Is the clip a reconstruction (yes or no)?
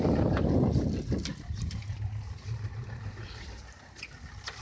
no